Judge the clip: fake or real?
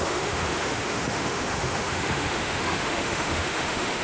fake